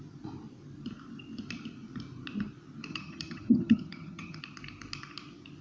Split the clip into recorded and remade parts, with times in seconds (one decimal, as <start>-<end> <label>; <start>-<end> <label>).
0.0-2.9 recorded; 2.9-4.4 remade; 4.4-5.6 recorded

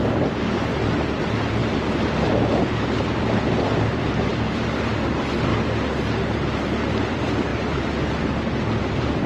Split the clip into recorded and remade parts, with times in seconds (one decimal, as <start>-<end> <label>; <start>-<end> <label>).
0.0-1.6 remade; 1.6-3.0 recorded; 3.0-5.5 remade; 5.5-6.7 recorded; 6.7-7.5 remade; 7.5-8.8 recorded; 8.8-9.3 remade

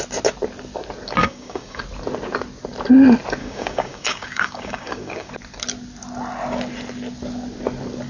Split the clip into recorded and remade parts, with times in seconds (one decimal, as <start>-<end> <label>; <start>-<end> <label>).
0.0-1.2 recorded; 1.2-1.8 remade; 1.8-3.4 recorded; 3.4-5.3 remade; 5.3-8.1 recorded

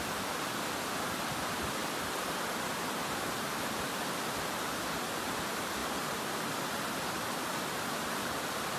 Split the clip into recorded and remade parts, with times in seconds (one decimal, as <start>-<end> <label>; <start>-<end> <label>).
0.0-8.8 recorded

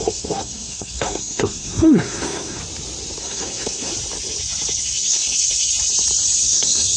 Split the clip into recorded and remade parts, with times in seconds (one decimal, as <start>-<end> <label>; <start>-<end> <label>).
0.0-2.6 remade; 2.6-3.2 recorded; 3.2-3.9 remade; 3.9-4.8 recorded; 4.8-5.7 remade; 5.7-6.4 recorded; 6.4-7.0 remade

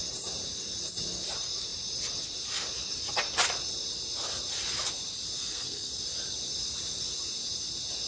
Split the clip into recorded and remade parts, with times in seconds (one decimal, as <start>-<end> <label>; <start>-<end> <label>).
0.0-5.4 recorded; 5.4-5.9 remade; 5.9-8.1 recorded